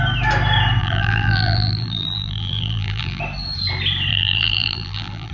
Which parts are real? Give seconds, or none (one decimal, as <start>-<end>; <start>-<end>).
0.0-0.8; 3.2-4.1